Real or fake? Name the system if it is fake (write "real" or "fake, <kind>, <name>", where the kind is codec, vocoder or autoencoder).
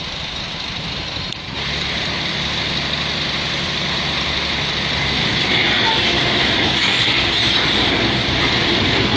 fake, vocoder, BigVGAN v2